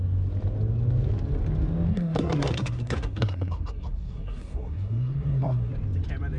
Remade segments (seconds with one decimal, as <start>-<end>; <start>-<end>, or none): 1.9-5.7